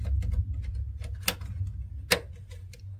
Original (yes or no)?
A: yes